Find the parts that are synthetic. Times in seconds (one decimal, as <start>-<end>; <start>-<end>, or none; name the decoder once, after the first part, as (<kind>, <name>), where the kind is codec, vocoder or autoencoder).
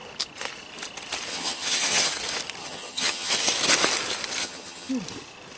1.3-2.1 (vocoder, HiFi-GAN); 2.6-3.3; 4.4-4.9